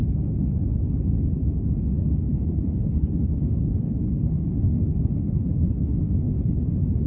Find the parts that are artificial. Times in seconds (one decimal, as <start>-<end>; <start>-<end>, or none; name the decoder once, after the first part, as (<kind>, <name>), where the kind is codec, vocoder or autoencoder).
0.0-0.8 (codec, HILCodec); 2.3-6.6